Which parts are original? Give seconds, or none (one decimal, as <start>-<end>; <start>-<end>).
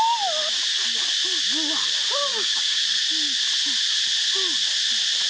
0.0-2.3; 3.0-5.3